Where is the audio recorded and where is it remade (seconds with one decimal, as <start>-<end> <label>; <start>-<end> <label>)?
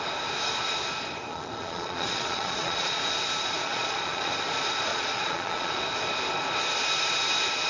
0.0-1.3 recorded; 1.3-3.0 remade; 3.0-3.6 recorded; 3.6-4.3 remade; 4.3-4.9 recorded; 4.9-5.8 remade; 5.8-7.7 recorded